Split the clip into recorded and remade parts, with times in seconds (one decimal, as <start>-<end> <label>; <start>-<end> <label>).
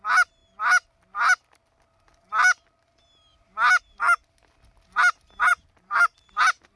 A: 0.0-5.5 recorded; 5.5-6.3 remade; 6.3-6.8 recorded